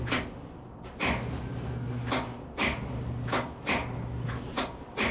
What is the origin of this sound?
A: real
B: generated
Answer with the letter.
A